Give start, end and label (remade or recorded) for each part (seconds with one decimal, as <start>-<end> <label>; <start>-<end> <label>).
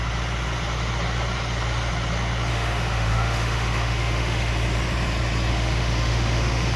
0.0-2.5 recorded; 2.5-4.5 remade; 4.5-5.5 recorded; 5.5-6.8 remade